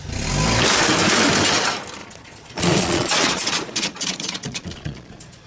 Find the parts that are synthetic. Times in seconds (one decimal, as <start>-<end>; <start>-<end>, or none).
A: 2.0-5.5